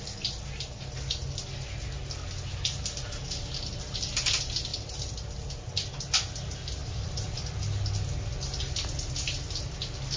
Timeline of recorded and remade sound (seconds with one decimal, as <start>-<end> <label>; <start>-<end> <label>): 0.0-4.7 recorded; 4.7-6.0 remade; 6.0-6.8 recorded; 6.8-7.6 remade; 7.6-10.2 recorded